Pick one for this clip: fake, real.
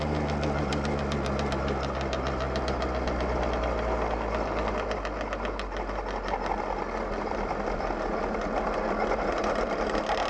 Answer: real